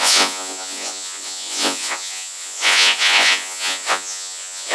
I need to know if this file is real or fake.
fake